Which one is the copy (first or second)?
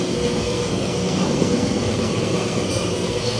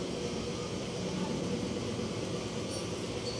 first